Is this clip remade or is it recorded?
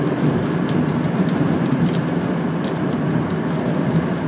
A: recorded